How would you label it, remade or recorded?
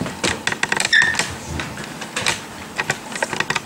recorded